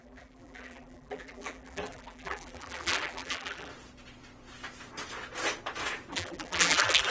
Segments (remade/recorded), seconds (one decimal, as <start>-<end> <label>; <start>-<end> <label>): 0.0-3.7 remade; 3.7-6.1 recorded; 6.1-7.1 remade